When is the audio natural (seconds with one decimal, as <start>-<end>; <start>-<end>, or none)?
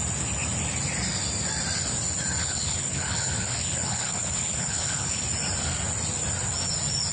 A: 0.0-2.4; 5.2-7.1